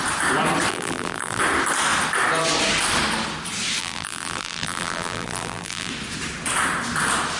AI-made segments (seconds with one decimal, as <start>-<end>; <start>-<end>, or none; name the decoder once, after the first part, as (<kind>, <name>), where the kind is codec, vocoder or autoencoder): 0.7-1.4 (vocoder, BigVGAN v2); 3.8-5.9